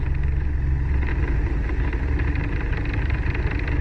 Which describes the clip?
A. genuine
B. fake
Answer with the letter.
A